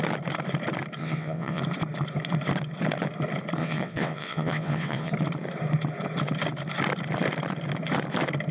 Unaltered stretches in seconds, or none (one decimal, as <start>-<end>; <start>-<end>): 0.0-1.0; 1.6-3.6; 5.1-8.5